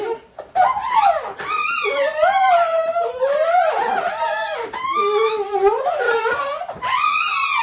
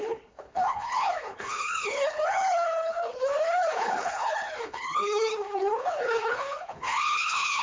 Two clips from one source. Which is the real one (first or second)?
first